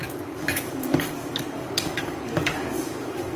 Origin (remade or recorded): remade